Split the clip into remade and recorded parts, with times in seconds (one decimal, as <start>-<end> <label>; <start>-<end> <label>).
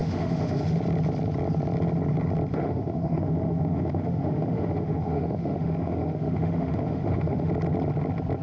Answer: 0.0-0.8 remade; 0.8-2.5 recorded; 2.5-7.5 remade; 7.5-8.4 recorded